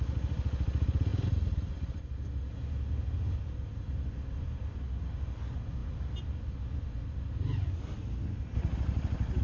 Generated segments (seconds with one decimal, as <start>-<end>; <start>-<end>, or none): none